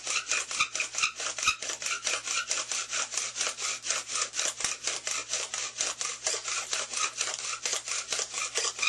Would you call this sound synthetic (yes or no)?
no